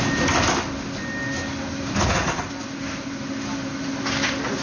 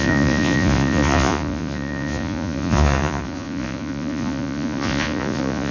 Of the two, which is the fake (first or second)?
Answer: second